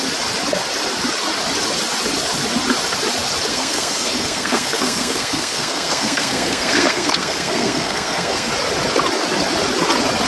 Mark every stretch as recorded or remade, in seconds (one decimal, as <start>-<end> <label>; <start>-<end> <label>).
0.0-3.5 recorded; 3.5-8.5 remade; 8.5-10.3 recorded